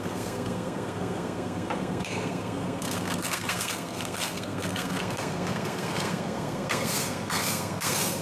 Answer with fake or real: fake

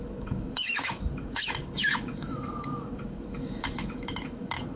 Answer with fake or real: fake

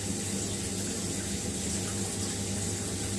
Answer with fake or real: real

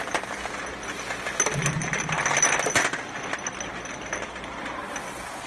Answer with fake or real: real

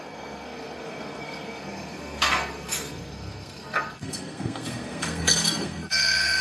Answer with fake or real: fake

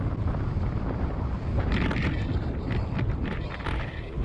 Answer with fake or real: real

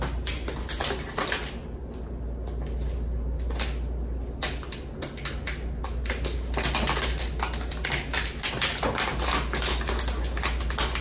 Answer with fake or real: real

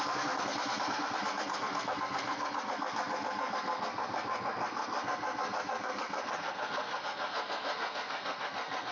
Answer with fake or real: fake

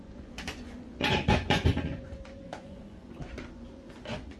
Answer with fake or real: fake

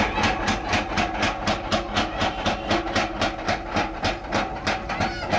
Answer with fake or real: real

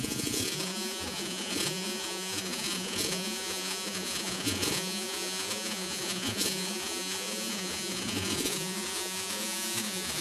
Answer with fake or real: fake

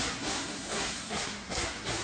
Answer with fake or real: fake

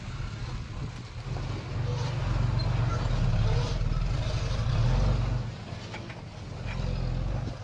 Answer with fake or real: real